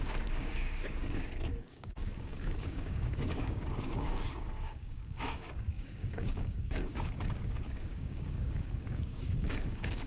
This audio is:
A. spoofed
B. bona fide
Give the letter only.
A